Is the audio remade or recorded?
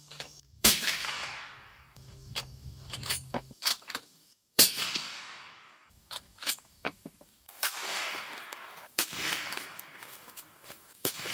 remade